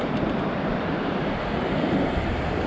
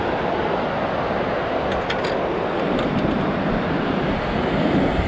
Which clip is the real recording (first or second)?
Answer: second